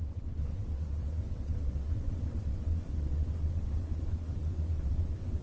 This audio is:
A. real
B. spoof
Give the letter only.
B